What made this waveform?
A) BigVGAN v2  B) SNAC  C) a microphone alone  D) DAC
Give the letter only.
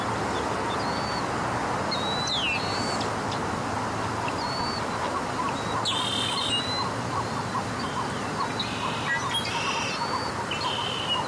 C